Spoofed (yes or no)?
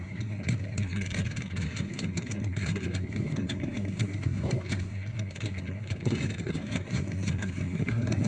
yes